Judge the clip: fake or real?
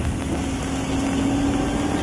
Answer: real